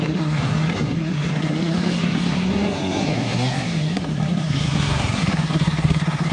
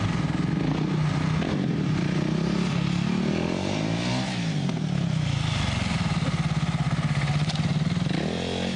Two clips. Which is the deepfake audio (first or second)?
first